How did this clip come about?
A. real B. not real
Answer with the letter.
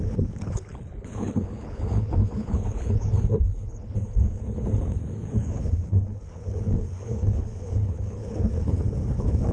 B